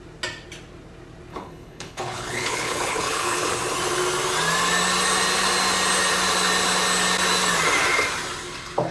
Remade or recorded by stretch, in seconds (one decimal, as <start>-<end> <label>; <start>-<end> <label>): 0.0-1.3 recorded; 1.3-3.5 remade; 3.5-8.9 recorded